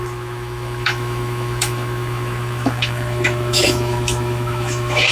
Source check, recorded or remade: remade